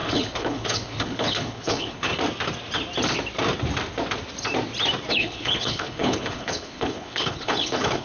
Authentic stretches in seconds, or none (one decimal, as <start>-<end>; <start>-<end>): 2.1-5.1